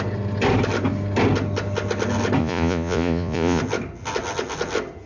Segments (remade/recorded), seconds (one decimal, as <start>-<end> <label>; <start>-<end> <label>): 0.0-2.4 recorded; 2.4-3.6 remade; 3.6-5.1 recorded